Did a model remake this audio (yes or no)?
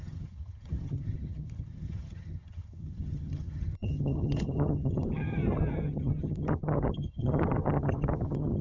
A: yes